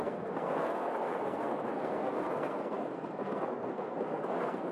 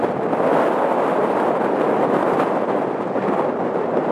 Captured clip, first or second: second